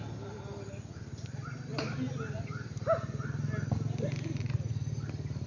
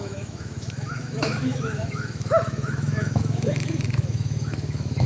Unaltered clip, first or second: first